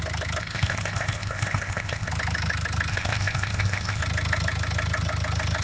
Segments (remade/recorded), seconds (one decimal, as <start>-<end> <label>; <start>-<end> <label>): 0.0-0.4 recorded; 0.4-2.1 remade; 2.1-2.9 recorded; 2.9-4.0 remade; 4.0-5.6 recorded